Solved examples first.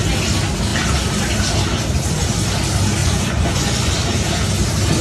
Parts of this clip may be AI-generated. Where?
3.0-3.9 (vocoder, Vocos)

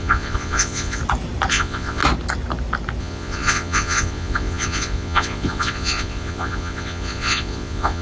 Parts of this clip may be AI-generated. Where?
0.0-1.0 (vocoder, Vocos); 1.5-2.0; 3.0-8.0

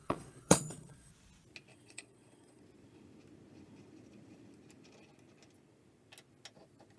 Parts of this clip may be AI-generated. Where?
0.0-1.1 (vocoder, Vocos); 1.7-2.6

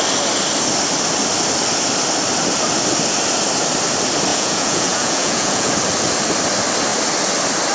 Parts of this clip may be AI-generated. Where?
4.3-5.7 (vocoder, Vocos)